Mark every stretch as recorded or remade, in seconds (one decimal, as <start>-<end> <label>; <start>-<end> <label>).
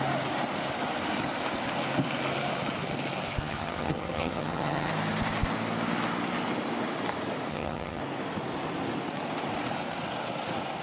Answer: 0.0-3.4 recorded; 3.4-4.9 remade; 4.9-7.5 recorded; 7.5-8.0 remade; 8.0-10.8 recorded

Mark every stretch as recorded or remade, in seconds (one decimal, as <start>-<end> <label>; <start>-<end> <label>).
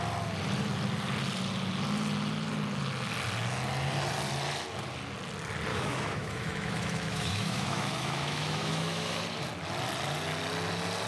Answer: 0.0-5.7 recorded; 5.7-9.2 remade; 9.2-11.1 recorded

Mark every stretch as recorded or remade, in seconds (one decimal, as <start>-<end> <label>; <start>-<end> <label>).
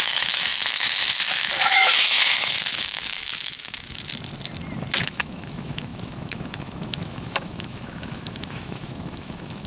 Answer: 0.0-4.1 remade; 4.1-5.0 recorded; 5.0-9.7 remade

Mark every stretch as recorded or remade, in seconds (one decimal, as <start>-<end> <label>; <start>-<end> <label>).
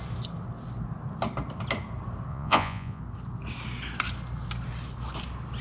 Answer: 0.0-2.3 recorded; 2.3-3.0 remade; 3.0-5.6 recorded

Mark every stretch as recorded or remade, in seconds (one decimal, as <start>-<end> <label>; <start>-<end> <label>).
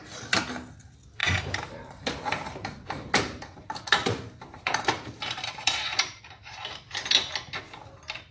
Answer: 0.0-1.2 recorded; 1.2-6.2 remade; 6.2-8.3 recorded